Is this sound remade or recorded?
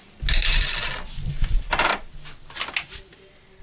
recorded